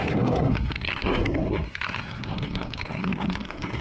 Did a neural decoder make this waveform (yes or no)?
yes